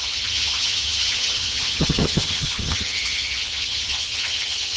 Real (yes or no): no